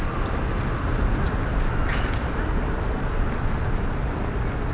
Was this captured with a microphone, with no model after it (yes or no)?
yes